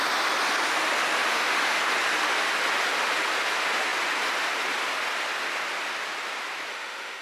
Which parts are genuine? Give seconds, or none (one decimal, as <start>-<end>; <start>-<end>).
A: 0.0-1.3; 1.8-6.7